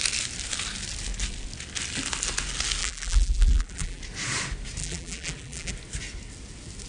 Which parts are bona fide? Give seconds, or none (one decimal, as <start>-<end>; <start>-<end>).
0.0-2.8; 4.0-4.8; 5.7-6.9